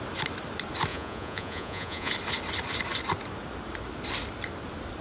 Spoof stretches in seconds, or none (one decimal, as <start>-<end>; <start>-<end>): 0.9-2.1